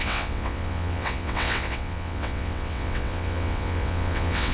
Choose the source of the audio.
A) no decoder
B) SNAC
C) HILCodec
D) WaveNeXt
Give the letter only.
D